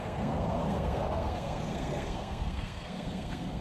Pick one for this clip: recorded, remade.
remade